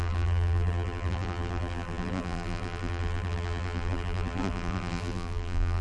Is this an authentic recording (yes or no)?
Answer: no